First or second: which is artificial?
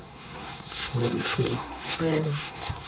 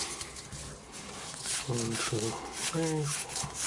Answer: first